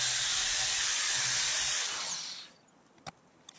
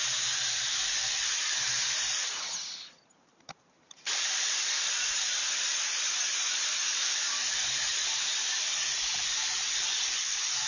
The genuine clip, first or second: first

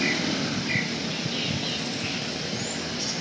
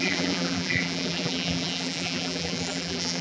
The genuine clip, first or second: first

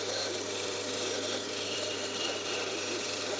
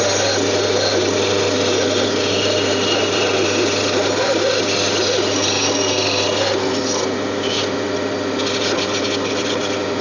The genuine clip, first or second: second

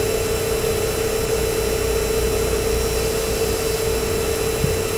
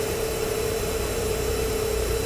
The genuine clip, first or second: first